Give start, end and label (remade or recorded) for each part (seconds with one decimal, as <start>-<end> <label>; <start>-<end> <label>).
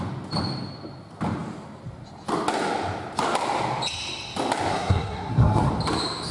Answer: 0.0-4.7 recorded; 4.7-5.7 remade; 5.7-6.3 recorded